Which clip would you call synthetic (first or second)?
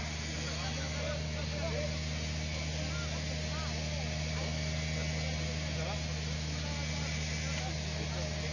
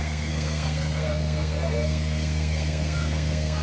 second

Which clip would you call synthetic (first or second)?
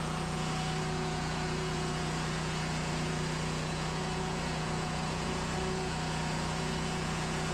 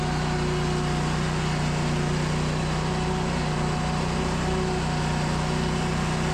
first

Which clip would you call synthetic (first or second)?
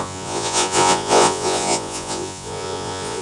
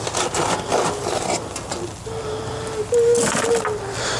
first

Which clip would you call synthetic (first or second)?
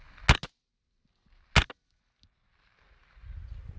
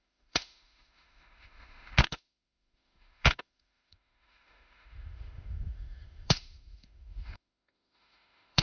second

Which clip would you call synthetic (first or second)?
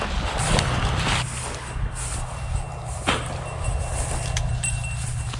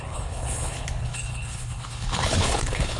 second